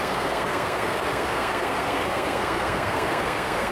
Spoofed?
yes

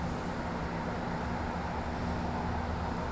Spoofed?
no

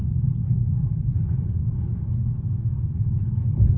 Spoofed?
no